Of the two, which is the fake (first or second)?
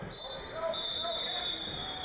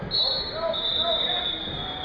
first